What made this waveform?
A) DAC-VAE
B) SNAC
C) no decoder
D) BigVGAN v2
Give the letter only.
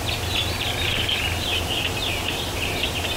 C